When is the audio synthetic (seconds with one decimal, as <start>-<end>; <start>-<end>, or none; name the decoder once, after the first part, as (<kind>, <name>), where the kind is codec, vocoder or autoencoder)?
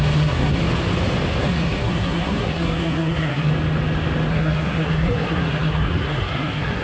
0.0-0.6 (codec, SNAC); 1.4-3.5; 4.3-6.8